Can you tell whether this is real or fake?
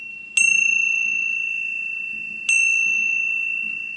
real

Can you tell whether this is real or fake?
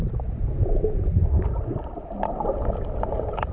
real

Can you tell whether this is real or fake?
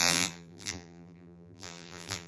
fake